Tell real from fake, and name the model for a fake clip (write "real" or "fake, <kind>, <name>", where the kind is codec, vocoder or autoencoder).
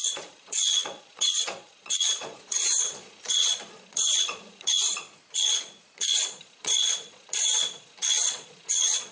fake, vocoder, Vocos